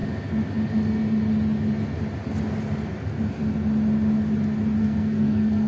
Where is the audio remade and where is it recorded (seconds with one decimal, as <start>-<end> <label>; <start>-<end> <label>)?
0.0-4.8 recorded; 4.8-5.7 remade

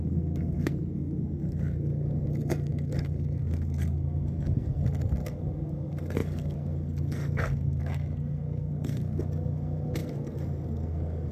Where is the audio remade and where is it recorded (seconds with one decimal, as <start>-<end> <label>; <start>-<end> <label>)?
0.0-11.3 remade

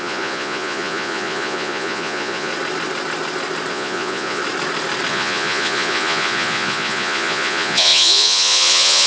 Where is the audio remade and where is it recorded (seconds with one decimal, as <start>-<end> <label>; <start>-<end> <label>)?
0.0-2.5 remade; 2.5-3.7 recorded; 3.7-4.4 remade; 4.4-5.1 recorded; 5.1-9.1 remade

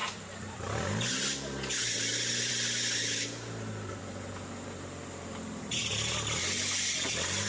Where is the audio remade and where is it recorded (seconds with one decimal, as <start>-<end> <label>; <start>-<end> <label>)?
0.0-7.5 recorded

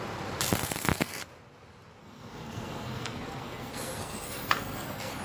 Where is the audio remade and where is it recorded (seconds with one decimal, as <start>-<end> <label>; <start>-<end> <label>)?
0.0-0.6 recorded; 0.6-1.1 remade; 1.1-2.0 recorded; 2.0-5.2 remade